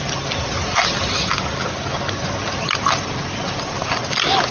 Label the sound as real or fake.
real